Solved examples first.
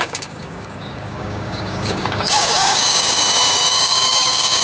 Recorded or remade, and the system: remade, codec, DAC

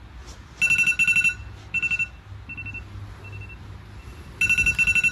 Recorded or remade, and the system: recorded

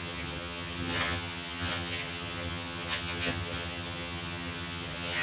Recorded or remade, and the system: remade, vocoder, HiFi-GAN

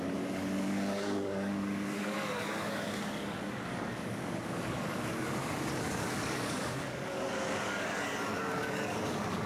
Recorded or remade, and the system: remade, codec, DAC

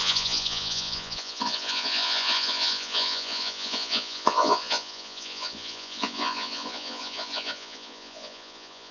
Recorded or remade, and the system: remade, vocoder, Vocos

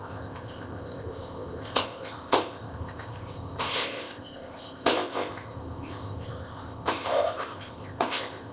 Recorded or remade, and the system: remade, codec, ZipCodec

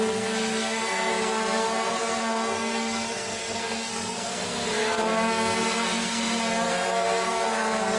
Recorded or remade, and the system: remade, codec, SNAC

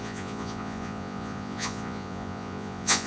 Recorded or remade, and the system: remade, vocoder, Vocos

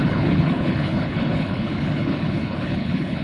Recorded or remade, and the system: remade, codec, HILCodec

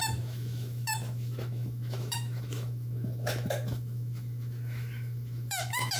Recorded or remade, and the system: remade, autoencoder, DAC-VAE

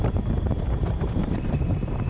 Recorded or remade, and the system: remade, vocoder, BigVGAN v2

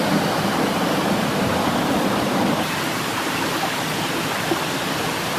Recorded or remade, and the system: recorded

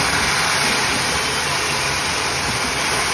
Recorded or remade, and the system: recorded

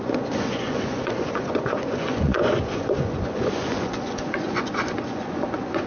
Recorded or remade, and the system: remade, vocoder, Vocos